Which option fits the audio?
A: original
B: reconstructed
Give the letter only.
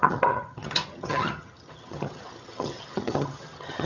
B